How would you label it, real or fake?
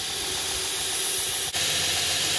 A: real